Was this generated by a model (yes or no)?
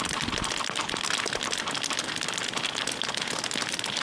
no